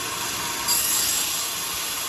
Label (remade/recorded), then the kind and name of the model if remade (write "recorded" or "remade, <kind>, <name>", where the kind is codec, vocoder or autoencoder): recorded